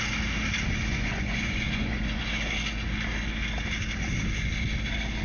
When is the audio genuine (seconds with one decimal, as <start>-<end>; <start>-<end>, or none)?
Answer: 0.0-0.9; 2.3-5.2